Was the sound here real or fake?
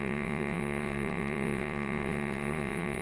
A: fake